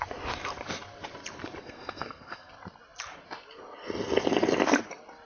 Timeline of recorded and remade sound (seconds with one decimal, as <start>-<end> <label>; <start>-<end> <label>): 0.0-1.6 recorded; 1.6-2.5 remade; 2.5-5.3 recorded